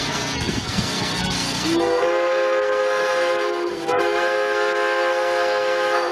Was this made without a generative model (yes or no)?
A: no